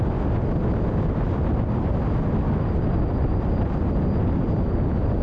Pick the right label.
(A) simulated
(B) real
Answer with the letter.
B